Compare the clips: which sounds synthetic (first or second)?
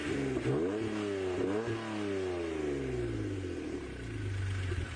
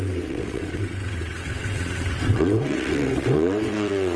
second